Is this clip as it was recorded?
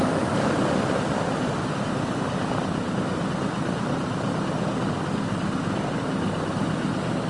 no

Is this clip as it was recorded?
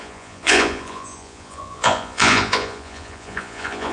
no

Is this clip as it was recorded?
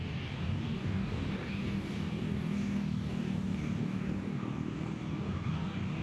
no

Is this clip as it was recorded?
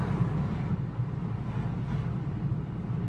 yes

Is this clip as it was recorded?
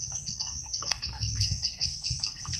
no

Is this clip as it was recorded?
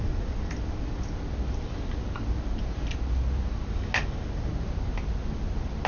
yes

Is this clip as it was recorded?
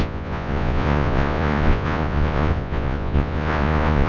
no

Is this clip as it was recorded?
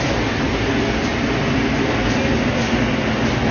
yes